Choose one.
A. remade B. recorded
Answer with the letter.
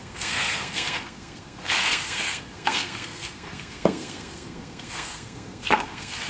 A